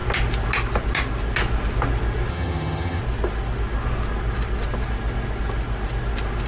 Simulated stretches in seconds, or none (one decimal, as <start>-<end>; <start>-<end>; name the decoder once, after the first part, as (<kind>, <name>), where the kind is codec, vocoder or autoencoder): 2.3-3.0 (vocoder, HiFi-GAN)